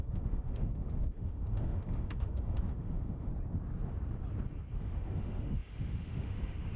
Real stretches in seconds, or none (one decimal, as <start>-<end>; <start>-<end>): 3.3-4.8